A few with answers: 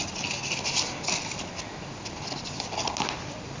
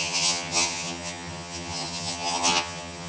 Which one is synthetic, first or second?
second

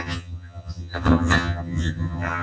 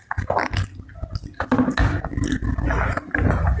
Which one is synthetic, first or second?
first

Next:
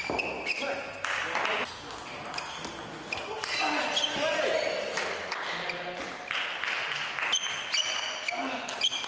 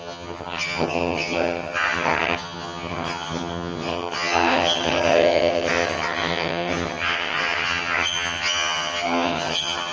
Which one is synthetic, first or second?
second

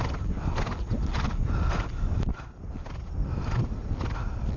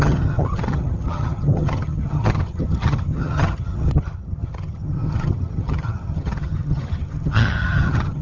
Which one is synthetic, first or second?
second